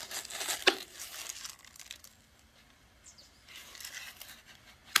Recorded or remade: recorded